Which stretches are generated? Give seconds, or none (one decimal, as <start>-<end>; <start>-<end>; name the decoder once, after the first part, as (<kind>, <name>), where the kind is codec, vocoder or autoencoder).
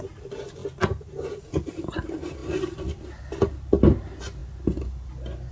none